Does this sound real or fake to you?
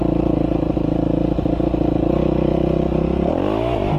real